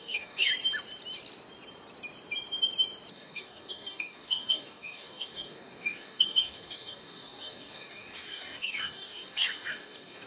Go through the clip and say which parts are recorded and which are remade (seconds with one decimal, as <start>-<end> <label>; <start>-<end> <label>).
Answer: 0.0-0.5 remade; 0.5-3.1 recorded; 3.1-10.3 remade